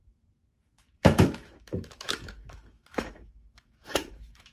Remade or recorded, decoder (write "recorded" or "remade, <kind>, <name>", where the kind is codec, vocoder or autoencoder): remade, autoencoder, DAC-VAE